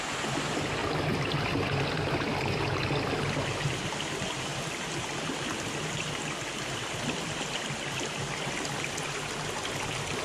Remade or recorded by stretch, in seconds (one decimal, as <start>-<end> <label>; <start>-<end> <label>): 0.0-0.8 recorded; 0.8-1.4 remade; 1.4-10.2 recorded

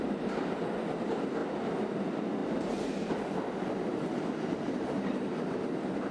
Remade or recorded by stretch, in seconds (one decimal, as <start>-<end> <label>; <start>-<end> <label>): 0.0-2.4 recorded; 2.4-6.1 remade

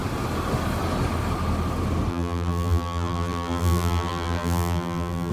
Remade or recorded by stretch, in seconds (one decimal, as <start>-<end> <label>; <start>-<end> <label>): 0.0-2.1 recorded; 2.1-5.3 remade

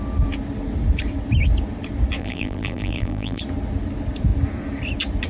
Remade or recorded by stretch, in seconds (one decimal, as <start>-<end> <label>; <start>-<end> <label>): 0.0-2.2 recorded; 2.2-3.4 remade; 3.4-5.3 recorded

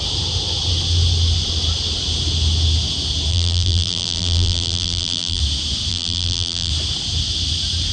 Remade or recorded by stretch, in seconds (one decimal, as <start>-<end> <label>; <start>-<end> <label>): 0.0-3.3 recorded; 3.3-5.4 remade; 5.4-5.9 recorded; 5.9-6.7 remade; 6.7-7.9 recorded

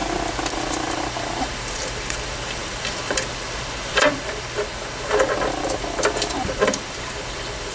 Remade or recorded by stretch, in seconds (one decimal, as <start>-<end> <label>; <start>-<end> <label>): 0.0-0.5 recorded; 0.5-7.7 remade

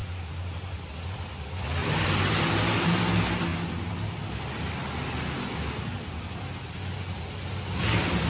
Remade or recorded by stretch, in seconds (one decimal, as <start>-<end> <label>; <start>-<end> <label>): 0.0-1.2 remade; 1.2-1.8 recorded; 1.8-3.0 remade; 3.0-8.3 recorded

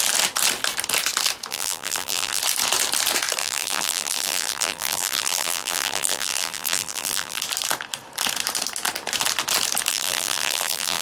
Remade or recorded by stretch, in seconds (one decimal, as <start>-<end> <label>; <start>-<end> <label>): 0.0-1.5 recorded; 1.5-2.4 remade; 2.4-3.4 recorded; 3.4-7.4 remade; 7.4-9.9 recorded; 9.9-11.0 remade